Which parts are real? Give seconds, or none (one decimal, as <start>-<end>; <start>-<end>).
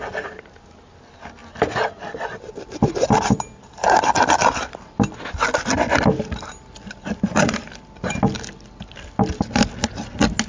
0.0-10.5